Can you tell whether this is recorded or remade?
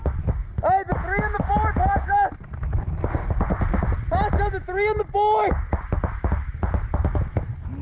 recorded